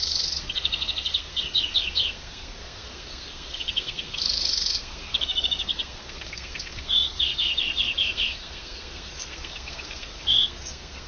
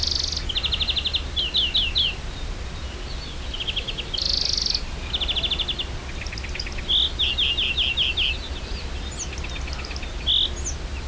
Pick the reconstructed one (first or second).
first